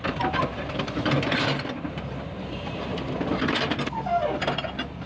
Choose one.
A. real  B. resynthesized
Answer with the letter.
A